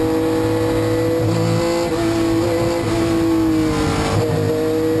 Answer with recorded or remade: recorded